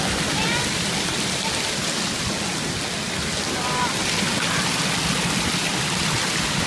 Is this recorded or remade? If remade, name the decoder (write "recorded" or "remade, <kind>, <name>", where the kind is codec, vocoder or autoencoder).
recorded